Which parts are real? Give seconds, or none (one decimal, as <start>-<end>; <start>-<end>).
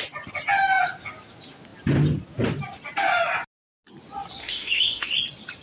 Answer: 0.0-4.4; 5.1-5.6